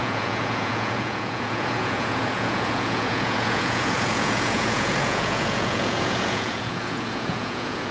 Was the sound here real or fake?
fake